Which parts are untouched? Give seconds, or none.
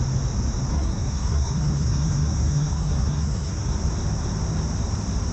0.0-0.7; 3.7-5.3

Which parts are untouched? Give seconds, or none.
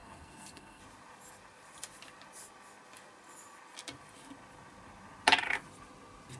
0.8-6.4